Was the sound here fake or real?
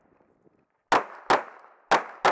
real